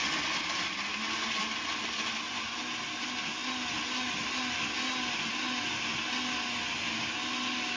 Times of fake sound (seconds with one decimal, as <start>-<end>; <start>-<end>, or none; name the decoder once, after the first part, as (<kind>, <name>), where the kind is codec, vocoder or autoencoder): none